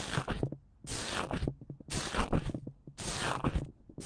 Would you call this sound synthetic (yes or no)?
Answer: no